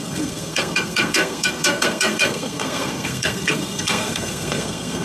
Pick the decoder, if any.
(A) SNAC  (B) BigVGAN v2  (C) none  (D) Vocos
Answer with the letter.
A